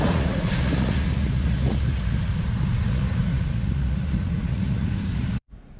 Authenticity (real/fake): fake